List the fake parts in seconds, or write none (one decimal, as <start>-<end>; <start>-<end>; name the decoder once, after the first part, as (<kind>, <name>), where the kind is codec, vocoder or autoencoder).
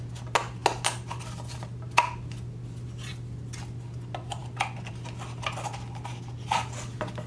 none